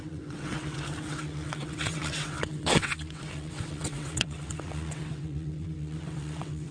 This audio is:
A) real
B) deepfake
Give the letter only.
B